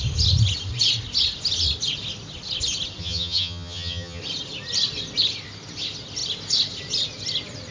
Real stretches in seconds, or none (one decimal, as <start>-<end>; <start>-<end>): 0.0-3.0; 4.2-7.7